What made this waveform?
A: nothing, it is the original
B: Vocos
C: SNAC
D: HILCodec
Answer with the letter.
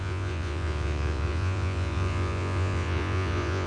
B